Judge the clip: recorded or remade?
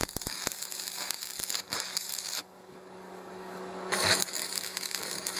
remade